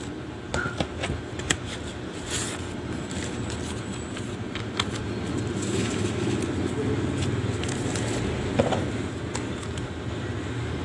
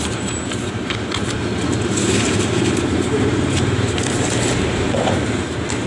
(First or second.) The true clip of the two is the first